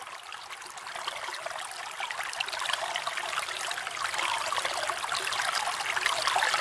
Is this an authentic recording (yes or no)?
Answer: yes